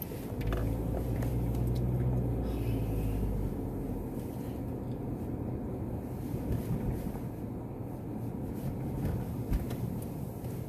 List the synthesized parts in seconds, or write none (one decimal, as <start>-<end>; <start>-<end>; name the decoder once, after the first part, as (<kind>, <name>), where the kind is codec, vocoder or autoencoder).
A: none